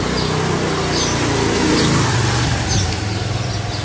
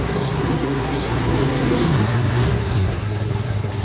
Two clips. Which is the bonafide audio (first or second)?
first